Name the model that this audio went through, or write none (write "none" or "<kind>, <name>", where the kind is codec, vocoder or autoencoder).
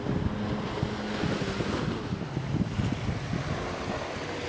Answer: none